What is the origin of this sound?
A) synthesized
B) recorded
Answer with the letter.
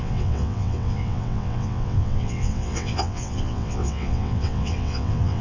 A